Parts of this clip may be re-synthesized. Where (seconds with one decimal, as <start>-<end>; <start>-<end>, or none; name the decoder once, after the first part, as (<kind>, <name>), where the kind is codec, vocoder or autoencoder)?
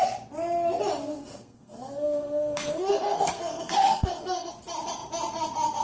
1.0-4.5 (codec, SNAC)